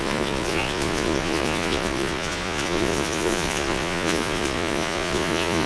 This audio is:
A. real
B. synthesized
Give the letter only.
B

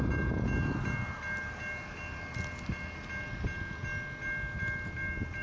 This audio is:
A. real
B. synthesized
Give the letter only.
A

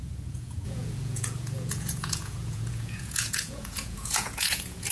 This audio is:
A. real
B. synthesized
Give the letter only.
B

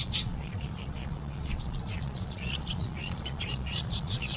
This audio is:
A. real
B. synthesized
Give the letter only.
B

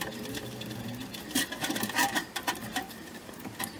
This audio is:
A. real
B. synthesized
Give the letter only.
B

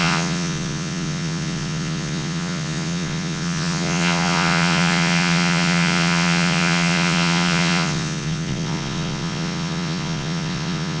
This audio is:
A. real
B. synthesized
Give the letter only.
B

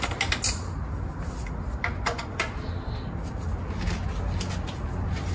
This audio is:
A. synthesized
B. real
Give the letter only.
B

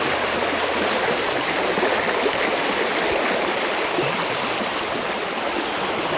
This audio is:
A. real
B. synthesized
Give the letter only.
A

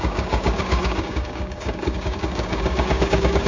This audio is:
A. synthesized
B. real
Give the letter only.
A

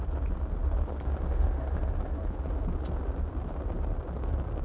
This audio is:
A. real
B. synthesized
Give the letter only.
A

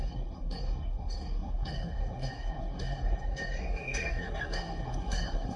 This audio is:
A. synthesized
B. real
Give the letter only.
A